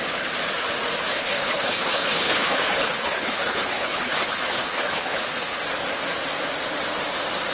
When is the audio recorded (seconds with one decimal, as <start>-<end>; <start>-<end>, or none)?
0.0-1.1; 5.6-7.5